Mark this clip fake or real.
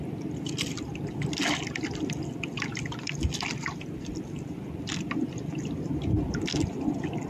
real